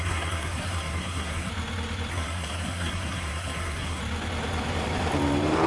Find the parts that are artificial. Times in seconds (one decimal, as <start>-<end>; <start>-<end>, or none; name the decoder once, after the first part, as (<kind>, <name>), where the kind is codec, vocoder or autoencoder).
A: 0.0-1.5 (codec, SNAC); 2.1-4.0